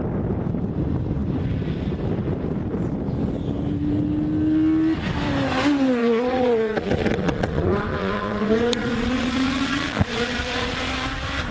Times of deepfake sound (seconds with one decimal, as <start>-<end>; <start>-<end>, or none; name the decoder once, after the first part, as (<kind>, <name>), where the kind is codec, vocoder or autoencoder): 6.0-10.9 (vocoder, Vocos)